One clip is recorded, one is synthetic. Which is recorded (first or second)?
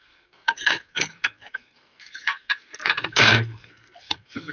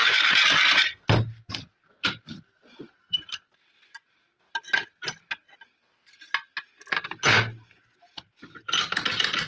second